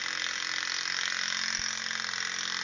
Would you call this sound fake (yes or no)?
no